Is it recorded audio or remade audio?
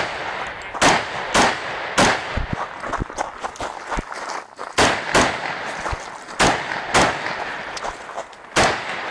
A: recorded